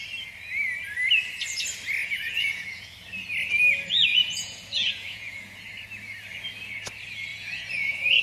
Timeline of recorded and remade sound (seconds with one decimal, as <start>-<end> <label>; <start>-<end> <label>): 0.0-2.0 recorded; 2.0-2.9 remade; 2.9-4.1 recorded; 4.1-5.6 remade; 5.6-7.3 recorded; 7.3-8.2 remade

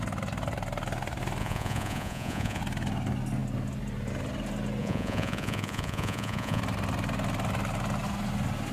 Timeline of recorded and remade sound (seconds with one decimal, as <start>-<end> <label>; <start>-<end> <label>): 0.0-1.4 recorded; 1.4-2.6 remade; 2.6-4.8 recorded; 4.8-6.6 remade; 6.6-8.7 recorded

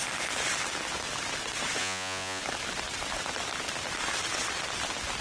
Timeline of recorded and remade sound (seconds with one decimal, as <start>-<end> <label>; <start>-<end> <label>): 0.0-1.8 recorded; 1.8-2.4 remade; 2.4-5.2 recorded

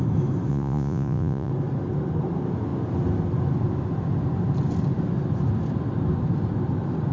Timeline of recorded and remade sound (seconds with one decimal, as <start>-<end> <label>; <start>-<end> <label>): 0.0-0.5 recorded; 0.5-1.5 remade; 1.5-7.1 recorded

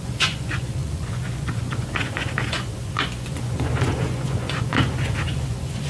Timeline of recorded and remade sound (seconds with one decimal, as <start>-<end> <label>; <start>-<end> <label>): 0.0-5.9 remade